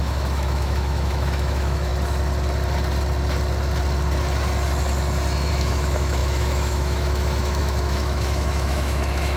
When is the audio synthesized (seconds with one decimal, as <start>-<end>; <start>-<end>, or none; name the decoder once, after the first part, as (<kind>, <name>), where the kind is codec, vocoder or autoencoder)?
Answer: 0.0-1.9 (autoencoder, DAC-VAE); 5.5-9.4